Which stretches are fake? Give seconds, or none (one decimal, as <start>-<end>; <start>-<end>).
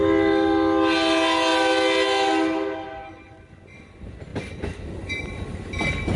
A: none